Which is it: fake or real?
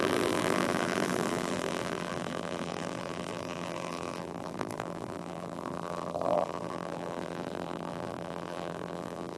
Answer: fake